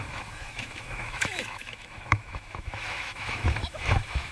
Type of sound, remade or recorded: remade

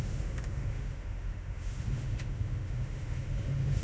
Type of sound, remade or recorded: remade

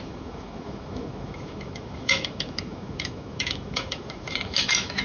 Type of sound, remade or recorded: remade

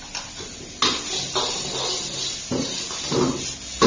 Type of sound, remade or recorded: recorded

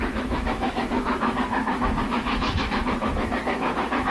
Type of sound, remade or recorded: remade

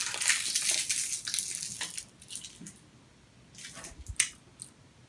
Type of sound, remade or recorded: recorded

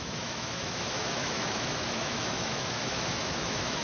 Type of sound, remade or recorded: remade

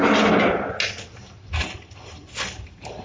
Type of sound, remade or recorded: recorded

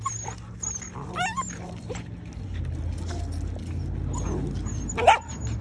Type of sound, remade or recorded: recorded